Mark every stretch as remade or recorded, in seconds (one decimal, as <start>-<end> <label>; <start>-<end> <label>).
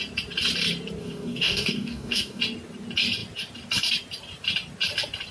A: 0.0-1.0 recorded; 1.0-2.4 remade; 2.4-5.3 recorded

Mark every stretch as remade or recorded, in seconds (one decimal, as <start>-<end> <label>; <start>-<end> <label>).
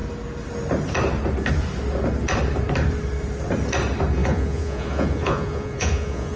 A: 0.0-4.2 recorded; 4.2-6.4 remade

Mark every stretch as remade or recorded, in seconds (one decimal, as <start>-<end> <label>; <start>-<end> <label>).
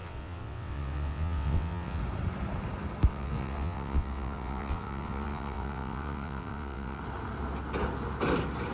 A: 0.0-2.0 remade; 2.0-3.1 recorded; 3.1-7.0 remade; 7.0-8.7 recorded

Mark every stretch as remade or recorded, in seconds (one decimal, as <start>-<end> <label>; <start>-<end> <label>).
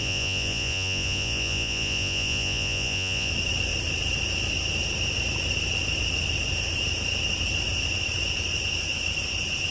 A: 0.0-3.3 remade; 3.3-9.7 recorded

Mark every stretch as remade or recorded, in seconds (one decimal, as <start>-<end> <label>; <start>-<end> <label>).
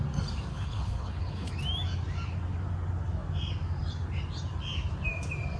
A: 0.0-0.5 recorded; 0.5-1.5 remade; 1.5-5.6 recorded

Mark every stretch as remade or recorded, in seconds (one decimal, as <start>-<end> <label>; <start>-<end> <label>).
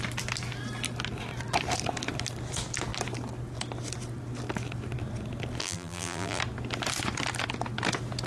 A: 0.0-5.6 recorded; 5.6-6.4 remade; 6.4-8.3 recorded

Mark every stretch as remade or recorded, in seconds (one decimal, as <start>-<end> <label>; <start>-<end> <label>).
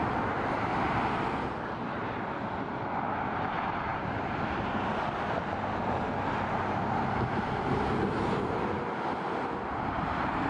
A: 0.0-10.5 recorded